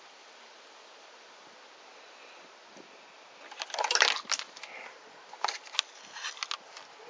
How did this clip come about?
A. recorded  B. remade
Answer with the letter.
A